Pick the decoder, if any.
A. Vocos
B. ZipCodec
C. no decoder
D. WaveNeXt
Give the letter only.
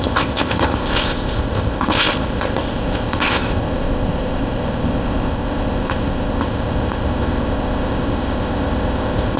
B